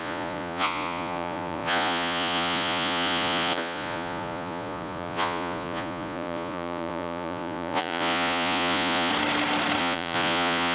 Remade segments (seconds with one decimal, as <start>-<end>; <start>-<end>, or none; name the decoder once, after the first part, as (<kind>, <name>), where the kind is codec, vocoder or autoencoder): 0.0-9.1 (vocoder, Vocos); 9.8-10.7